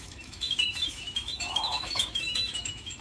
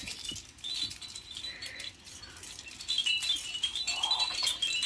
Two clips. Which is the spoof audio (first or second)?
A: first